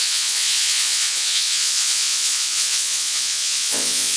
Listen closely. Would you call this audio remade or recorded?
remade